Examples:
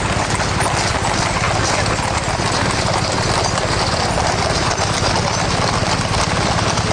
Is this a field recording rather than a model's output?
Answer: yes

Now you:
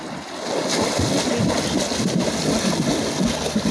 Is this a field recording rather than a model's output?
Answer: yes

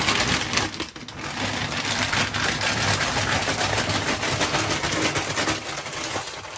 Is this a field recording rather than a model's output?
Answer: yes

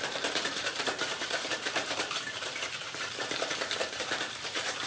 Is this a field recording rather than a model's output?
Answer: no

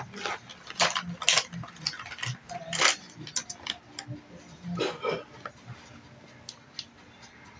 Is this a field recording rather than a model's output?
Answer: yes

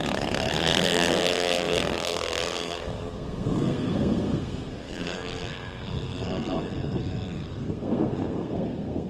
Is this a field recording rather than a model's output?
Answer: no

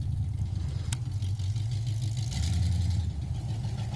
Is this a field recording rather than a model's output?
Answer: yes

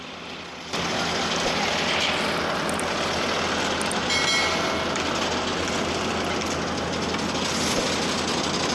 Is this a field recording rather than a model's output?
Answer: yes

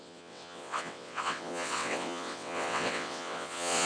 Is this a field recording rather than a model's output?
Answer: no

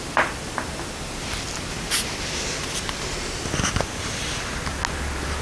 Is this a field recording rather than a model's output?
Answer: yes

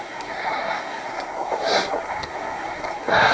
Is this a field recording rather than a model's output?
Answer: no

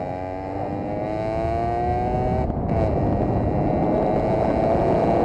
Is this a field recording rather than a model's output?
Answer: yes